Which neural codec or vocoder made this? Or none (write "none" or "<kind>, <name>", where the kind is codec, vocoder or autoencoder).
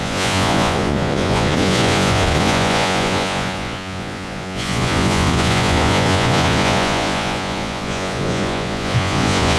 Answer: vocoder, Vocos